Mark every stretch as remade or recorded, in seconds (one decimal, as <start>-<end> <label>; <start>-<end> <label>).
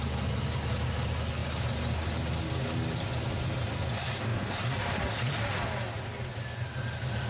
0.0-4.3 recorded; 4.3-5.5 remade; 5.5-7.3 recorded